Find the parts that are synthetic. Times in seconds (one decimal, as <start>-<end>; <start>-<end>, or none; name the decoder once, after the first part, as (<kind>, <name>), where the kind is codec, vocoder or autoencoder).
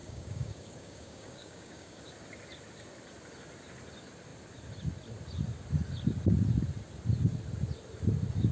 0.0-2.0 (codec, DAC)